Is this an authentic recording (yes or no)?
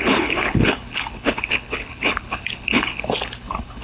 no